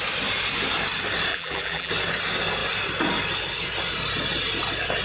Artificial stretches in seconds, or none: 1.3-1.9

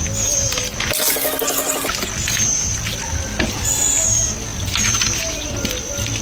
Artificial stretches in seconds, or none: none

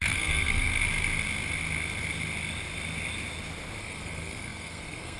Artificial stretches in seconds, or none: 0.0-0.7; 3.8-5.2

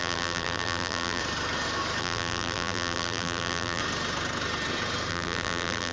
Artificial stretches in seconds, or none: 0.0-1.2; 2.0-3.8; 5.1-5.9

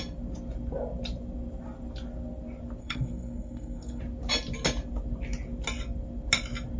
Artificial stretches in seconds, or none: 2.8-4.0

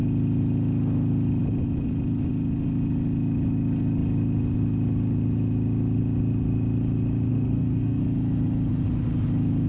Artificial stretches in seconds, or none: 7.3-8.0